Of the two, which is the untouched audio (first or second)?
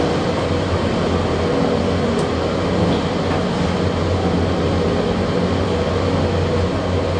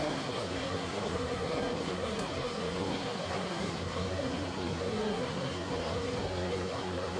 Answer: first